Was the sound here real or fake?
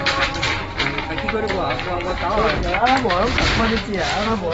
real